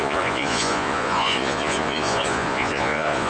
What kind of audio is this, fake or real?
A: fake